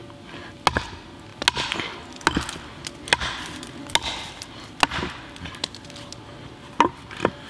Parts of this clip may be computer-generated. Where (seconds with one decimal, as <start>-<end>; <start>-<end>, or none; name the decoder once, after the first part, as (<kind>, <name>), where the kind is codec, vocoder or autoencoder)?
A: none